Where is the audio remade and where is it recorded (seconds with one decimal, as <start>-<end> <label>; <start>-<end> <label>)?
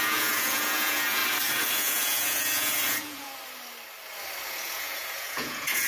0.0-1.2 remade; 1.2-1.7 recorded; 1.7-3.3 remade; 3.3-4.5 recorded; 4.5-5.9 remade